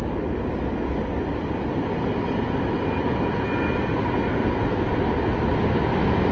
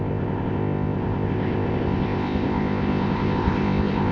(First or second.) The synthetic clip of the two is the second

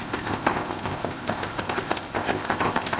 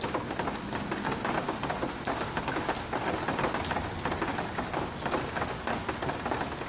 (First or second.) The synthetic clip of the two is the first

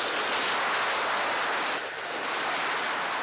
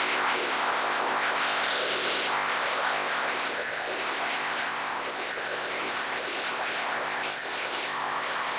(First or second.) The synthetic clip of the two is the second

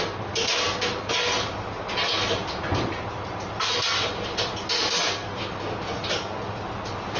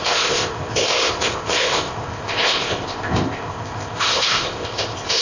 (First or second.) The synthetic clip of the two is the second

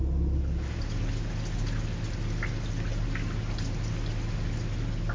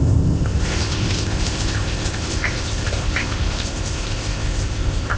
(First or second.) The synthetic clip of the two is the second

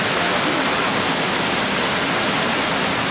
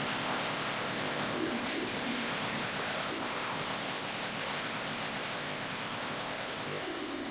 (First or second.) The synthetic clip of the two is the second